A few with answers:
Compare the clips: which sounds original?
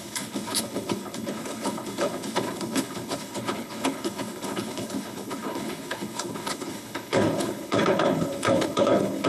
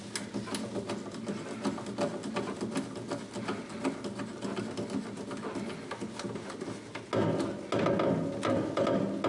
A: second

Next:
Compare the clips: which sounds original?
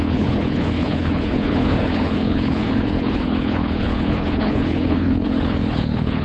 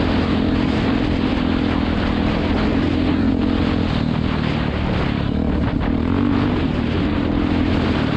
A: second